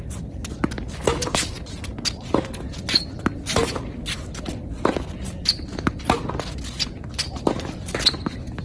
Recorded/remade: recorded